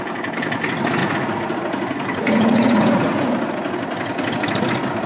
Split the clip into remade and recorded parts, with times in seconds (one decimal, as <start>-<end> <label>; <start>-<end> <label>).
0.0-1.0 recorded; 1.0-3.2 remade; 3.2-5.1 recorded